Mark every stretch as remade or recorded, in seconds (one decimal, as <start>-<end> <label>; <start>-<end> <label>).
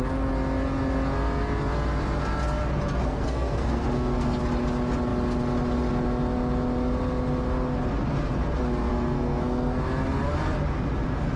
0.0-3.0 recorded; 3.0-4.4 remade; 4.4-8.9 recorded; 8.9-9.8 remade; 9.8-11.4 recorded